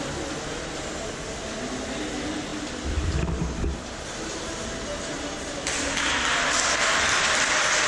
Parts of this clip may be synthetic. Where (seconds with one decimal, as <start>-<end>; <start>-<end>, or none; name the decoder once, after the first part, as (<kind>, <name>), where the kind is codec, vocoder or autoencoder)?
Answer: none